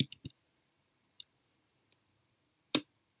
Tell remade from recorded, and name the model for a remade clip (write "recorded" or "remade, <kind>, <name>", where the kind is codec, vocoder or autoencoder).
remade, vocoder, BigVGAN v2